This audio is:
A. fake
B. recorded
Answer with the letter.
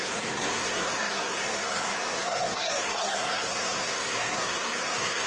A